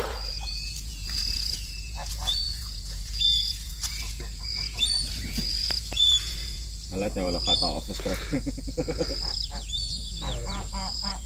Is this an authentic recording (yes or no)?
no